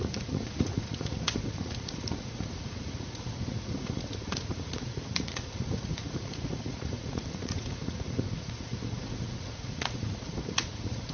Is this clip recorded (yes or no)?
no